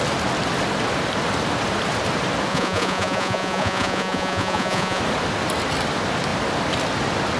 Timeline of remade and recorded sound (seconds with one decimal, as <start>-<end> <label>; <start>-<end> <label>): 0.0-2.5 recorded; 2.5-5.0 remade; 5.0-7.4 recorded